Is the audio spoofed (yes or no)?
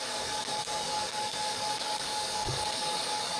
yes